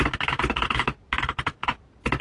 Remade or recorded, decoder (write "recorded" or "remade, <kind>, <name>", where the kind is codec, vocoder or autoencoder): recorded